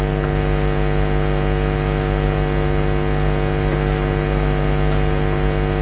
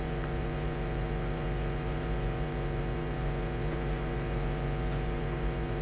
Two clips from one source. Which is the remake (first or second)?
second